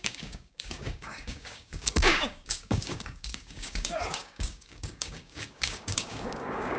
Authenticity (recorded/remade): remade